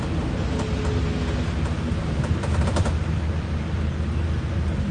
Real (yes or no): yes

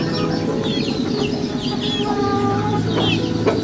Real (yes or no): yes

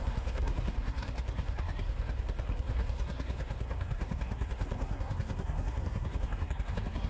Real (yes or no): no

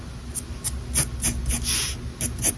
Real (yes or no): yes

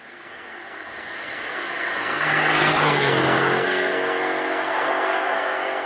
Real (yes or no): no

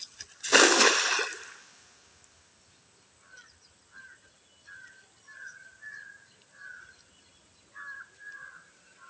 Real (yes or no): yes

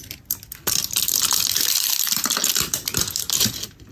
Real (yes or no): yes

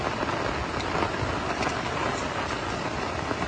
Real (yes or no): yes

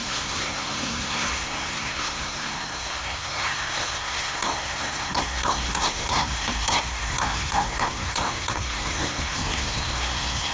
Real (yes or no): no